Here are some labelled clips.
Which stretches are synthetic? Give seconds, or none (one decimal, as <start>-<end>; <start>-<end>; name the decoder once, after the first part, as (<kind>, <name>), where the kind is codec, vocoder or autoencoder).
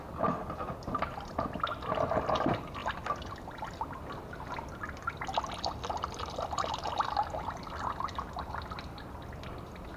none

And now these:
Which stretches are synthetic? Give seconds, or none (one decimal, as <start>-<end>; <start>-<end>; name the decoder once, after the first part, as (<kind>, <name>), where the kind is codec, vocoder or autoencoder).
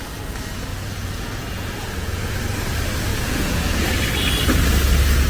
0.7-2.2 (vocoder, Vocos); 3.1-3.8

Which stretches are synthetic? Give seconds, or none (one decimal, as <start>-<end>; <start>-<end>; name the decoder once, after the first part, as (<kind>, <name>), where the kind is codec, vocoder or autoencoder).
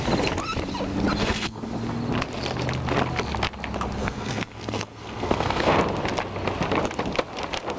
1.2-1.7 (codec, SNAC); 4.0-5.8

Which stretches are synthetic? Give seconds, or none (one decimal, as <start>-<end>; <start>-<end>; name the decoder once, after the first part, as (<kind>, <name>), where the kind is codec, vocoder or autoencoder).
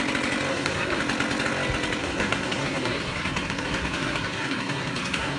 0.5-1.0 (codec, SNAC); 2.0-5.4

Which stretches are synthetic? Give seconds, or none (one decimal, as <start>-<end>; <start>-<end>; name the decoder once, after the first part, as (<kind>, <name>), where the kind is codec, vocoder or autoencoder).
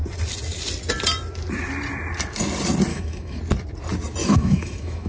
2.9-3.4 (autoencoder, DAC-VAE); 4.2-5.1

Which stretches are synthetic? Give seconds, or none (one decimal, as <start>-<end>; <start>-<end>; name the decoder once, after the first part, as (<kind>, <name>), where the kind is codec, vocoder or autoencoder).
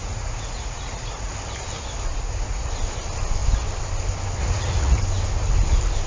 0.0-1.3 (vocoder, Vocos); 2.1-2.7; 4.4-5.0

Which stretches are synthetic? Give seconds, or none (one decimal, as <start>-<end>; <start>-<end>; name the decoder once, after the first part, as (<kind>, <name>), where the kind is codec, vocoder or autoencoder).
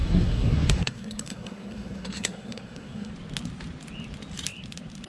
0.0-3.1 (codec, SNAC)